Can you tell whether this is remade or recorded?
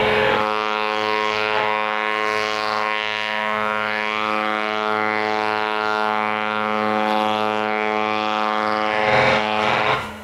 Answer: remade